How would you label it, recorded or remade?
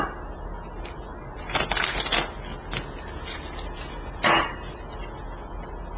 recorded